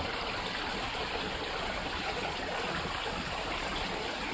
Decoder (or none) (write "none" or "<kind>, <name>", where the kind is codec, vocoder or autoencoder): none